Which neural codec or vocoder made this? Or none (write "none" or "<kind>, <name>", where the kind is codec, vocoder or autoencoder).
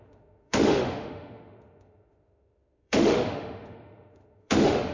autoencoder, DAC-VAE